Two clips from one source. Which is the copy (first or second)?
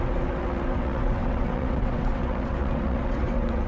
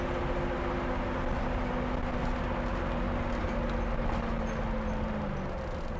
first